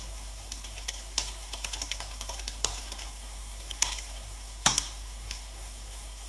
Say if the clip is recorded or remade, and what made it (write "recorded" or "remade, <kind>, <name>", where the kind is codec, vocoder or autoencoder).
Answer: remade, codec, SNAC